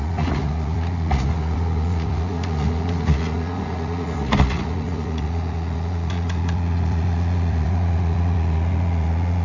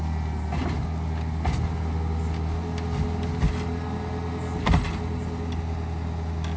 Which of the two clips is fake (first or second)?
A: first